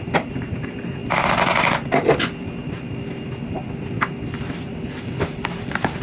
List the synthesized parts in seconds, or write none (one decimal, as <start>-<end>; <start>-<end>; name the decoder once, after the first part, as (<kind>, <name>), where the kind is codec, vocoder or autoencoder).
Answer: 0.0-1.0 (vocoder, BigVGAN v2); 4.6-6.0